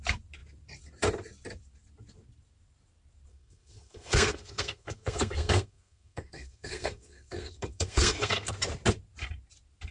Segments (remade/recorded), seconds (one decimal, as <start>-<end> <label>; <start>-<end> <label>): 0.0-3.3 recorded; 3.3-8.5 remade; 8.5-9.9 recorded